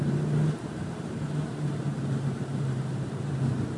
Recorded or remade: remade